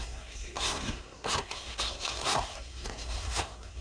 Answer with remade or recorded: remade